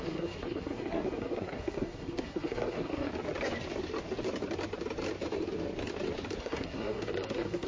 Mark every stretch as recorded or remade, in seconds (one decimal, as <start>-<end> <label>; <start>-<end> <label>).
0.0-3.1 remade; 3.1-6.4 recorded; 6.4-7.7 remade